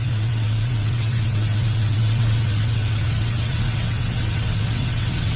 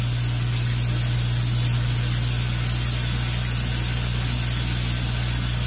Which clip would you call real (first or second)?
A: second